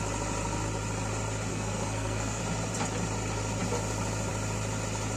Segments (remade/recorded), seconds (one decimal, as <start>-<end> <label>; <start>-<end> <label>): 0.0-1.5 recorded; 1.5-2.4 remade; 2.4-5.2 recorded